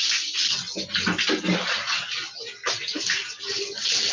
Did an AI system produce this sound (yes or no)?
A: no